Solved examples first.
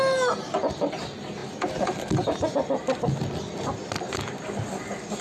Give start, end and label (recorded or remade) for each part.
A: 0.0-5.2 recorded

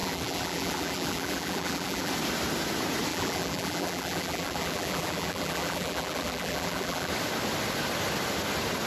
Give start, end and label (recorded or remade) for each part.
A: 0.0-2.1 remade; 2.1-3.1 recorded; 3.1-7.1 remade; 7.1-8.9 recorded

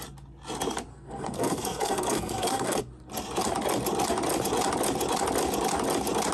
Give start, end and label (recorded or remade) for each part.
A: 0.0-0.9 recorded; 0.9-2.8 remade; 2.8-6.3 recorded

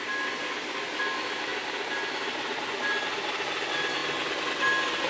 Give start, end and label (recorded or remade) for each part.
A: 0.0-5.1 recorded

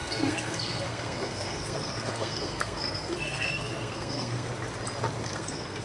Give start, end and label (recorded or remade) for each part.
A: 0.0-4.5 remade; 4.5-5.2 recorded; 5.2-5.8 remade

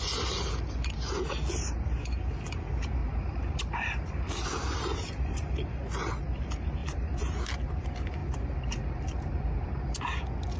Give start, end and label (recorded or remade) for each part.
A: 0.0-3.0 recorded; 3.0-5.5 remade; 5.5-6.8 recorded; 6.8-7.5 remade; 7.5-8.2 recorded; 8.2-10.0 remade; 10.0-10.6 recorded

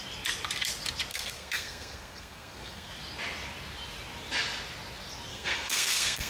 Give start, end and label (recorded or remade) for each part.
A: 0.0-1.1 recorded; 1.1-2.9 remade; 2.9-5.3 recorded; 5.3-6.3 remade